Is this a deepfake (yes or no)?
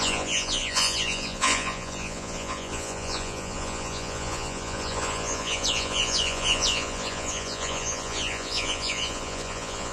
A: yes